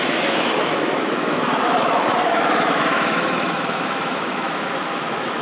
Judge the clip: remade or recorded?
remade